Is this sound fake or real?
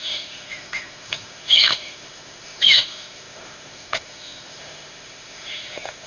fake